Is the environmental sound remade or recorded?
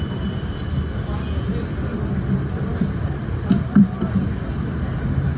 recorded